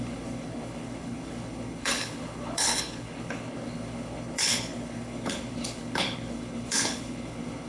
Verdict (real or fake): fake